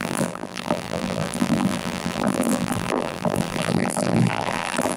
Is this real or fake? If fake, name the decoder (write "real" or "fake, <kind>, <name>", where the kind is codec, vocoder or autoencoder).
fake, vocoder, BigVGAN v2